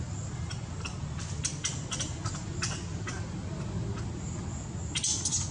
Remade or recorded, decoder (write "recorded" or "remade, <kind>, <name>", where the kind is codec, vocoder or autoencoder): recorded